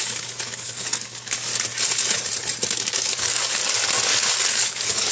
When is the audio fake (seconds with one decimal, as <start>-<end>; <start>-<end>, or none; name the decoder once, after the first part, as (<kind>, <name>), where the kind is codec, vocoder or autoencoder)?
0.0-1.5 (codec, DAC); 2.8-3.6; 4.5-5.1